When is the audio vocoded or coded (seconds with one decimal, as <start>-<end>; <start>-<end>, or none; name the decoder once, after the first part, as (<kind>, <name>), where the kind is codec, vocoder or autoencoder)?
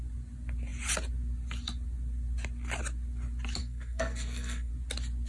3.6-4.7 (codec, SNAC)